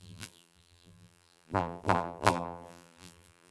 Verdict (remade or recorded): remade